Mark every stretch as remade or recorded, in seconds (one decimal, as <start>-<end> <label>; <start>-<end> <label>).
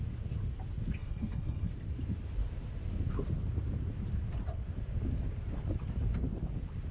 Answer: 0.0-1.0 recorded; 1.0-1.7 remade; 1.7-6.9 recorded